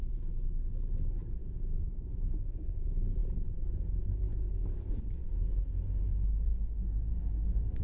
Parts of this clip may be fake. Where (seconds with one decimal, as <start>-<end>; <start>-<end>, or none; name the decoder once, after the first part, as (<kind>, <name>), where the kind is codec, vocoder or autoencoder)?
1.4-2.8 (codec, DAC); 6.5-7.8